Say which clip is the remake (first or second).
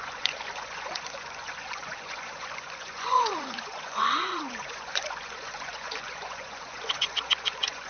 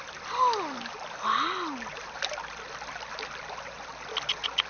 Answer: first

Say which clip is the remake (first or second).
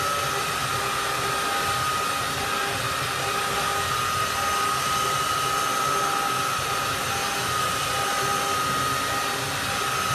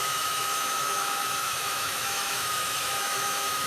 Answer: second